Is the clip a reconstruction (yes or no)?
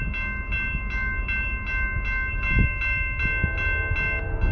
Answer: no